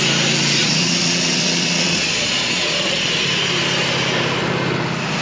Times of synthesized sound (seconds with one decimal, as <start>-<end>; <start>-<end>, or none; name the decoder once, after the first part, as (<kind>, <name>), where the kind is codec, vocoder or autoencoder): 0.6-3.1 (vocoder, Vocos)